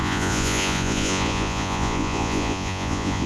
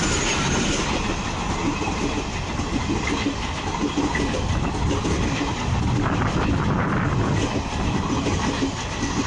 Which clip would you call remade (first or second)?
first